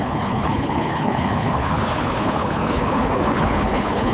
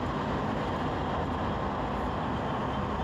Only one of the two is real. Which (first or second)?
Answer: second